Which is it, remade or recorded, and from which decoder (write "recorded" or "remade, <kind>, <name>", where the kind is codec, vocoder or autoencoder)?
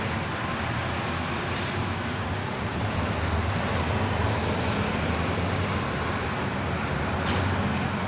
recorded